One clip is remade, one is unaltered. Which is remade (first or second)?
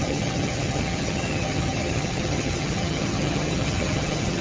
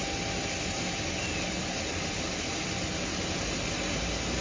first